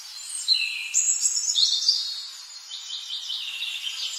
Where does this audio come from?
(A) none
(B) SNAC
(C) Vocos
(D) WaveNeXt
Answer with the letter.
A